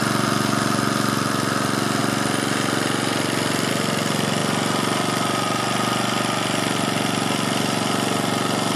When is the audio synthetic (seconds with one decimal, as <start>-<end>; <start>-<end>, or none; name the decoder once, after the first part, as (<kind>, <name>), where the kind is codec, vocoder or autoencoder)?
none